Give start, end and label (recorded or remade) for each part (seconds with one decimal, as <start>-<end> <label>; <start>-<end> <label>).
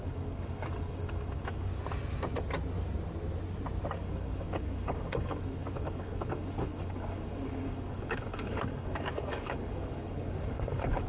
0.0-1.7 remade; 1.7-3.9 recorded; 3.9-11.1 remade